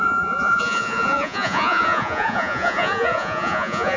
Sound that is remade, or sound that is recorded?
remade